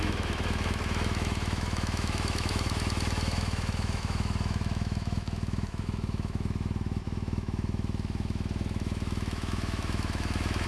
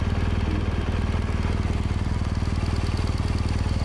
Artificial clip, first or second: first